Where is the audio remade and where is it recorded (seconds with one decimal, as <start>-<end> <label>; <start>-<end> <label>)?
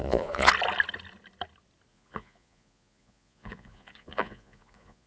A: 0.0-0.5 remade; 0.5-1.9 recorded; 1.9-5.1 remade